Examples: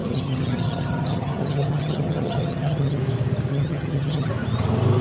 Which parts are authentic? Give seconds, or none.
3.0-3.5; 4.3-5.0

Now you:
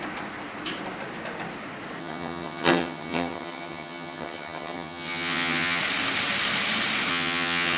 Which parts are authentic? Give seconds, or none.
0.0-2.0; 5.8-7.1

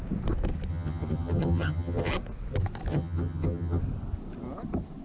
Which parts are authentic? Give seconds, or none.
0.0-0.7; 2.1-2.9; 3.8-5.0

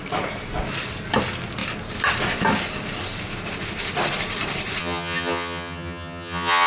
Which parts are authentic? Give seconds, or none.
0.0-4.8

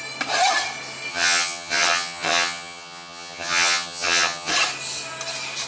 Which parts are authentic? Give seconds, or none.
0.0-1.1; 4.5-5.7

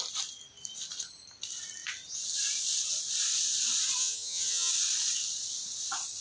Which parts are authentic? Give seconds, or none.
0.0-4.0; 4.7-6.2